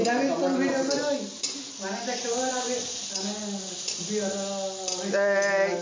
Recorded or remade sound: recorded